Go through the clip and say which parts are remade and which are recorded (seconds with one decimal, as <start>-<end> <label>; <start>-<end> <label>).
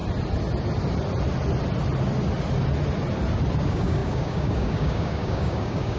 0.0-3.6 recorded; 3.6-6.0 remade